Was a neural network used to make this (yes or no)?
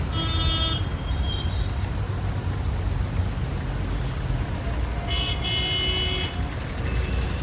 no